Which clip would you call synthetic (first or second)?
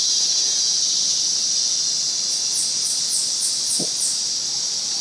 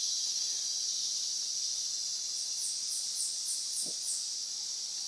second